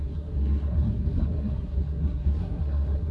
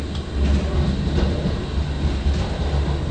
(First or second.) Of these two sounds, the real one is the second